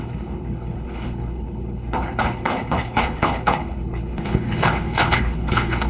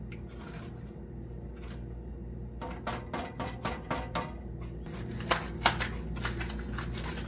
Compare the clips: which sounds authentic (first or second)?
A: second